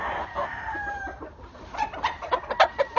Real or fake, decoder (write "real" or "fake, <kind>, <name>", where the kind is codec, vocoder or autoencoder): fake, vocoder, BigVGAN v2